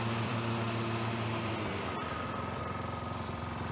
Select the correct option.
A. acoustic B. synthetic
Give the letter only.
B